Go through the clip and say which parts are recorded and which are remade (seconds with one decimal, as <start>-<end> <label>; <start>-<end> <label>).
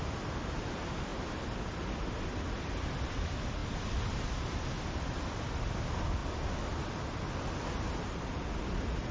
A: 0.0-9.1 recorded